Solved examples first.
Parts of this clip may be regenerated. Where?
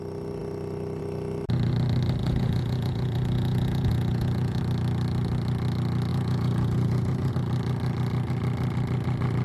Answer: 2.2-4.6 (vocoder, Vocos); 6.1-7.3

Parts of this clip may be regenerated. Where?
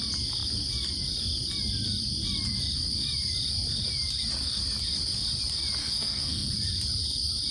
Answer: 5.8-6.5 (codec, SNAC)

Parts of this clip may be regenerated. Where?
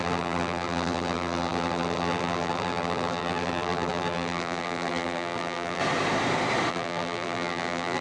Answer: 0.0-5.8 (vocoder, BigVGAN v2); 6.7-8.0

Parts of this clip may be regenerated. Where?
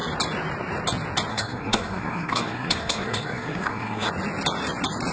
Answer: 1.3-4.1 (codec, SNAC)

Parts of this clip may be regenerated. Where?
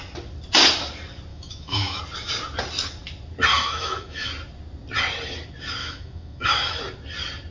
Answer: 1.3-2.0 (autoencoder, DAC-VAE); 3.5-4.3; 5.8-6.8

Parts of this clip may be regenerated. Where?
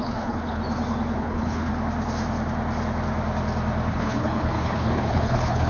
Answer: 0.0-0.6 (codec, HILCodec); 1.2-1.7; 3.9-5.7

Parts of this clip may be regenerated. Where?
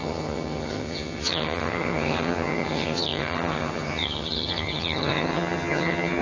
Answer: 0.0-6.2 (vocoder, HiFi-GAN)